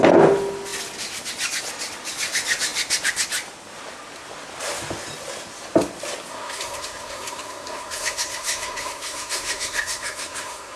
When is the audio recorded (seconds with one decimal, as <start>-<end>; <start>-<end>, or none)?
0.0-6.3

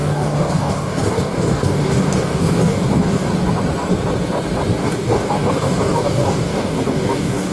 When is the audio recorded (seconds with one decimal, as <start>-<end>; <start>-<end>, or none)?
3.3-4.8

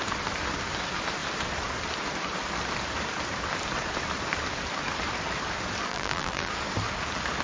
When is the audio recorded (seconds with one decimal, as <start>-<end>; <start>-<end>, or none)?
0.0-5.9; 6.5-7.4

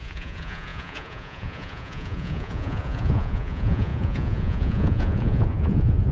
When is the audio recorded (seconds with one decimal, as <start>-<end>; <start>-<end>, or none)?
none

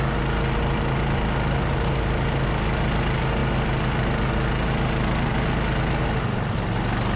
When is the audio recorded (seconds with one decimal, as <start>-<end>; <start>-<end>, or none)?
0.0-7.2

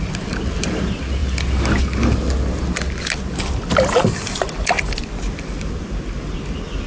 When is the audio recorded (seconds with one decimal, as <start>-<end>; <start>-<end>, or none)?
0.0-6.9